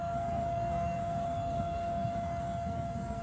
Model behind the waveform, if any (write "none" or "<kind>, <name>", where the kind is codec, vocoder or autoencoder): codec, SNAC